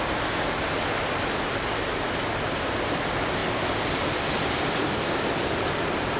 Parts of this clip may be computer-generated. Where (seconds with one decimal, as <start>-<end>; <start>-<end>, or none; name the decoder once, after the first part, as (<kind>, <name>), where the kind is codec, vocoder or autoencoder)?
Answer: none